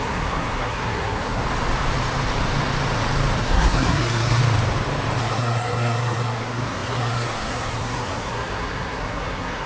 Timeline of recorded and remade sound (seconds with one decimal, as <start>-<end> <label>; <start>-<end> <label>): 0.0-1.4 remade; 1.4-3.4 recorded; 3.4-4.4 remade; 4.4-5.2 recorded; 5.2-9.7 remade